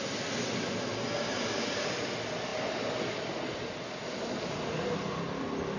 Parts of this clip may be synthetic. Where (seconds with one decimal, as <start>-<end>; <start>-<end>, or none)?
none

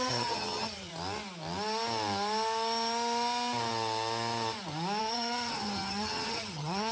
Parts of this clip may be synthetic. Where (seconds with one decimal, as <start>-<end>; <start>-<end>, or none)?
0.0-0.9; 5.0-6.9

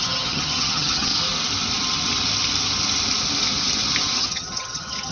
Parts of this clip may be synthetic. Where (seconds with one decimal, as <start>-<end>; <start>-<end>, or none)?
0.0-1.1; 4.2-5.1